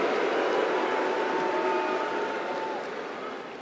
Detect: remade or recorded recorded